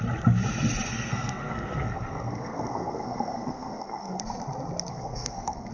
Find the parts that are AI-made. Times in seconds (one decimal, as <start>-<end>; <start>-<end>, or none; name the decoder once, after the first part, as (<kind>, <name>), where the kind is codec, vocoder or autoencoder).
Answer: 0.9-4.2 (codec, SNAC); 4.9-5.7